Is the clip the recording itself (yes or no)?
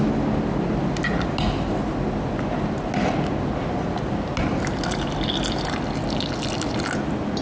yes